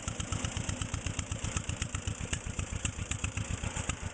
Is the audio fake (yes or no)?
yes